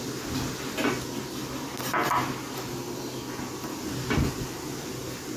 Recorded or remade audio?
recorded